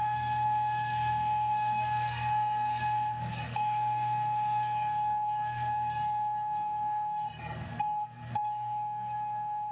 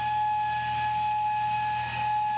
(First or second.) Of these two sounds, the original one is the second